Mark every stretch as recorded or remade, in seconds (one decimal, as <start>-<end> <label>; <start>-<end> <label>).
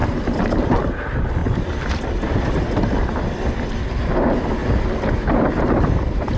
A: 0.0-0.8 remade; 0.8-1.4 recorded; 1.4-4.1 remade; 4.1-6.4 recorded